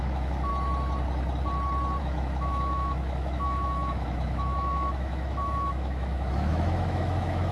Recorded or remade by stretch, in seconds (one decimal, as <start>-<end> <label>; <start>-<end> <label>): 0.0-0.5 remade; 0.5-2.0 recorded; 2.0-7.5 remade